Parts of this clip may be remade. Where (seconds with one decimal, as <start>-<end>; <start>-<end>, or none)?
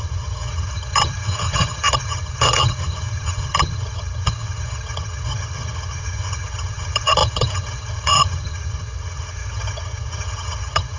0.0-11.0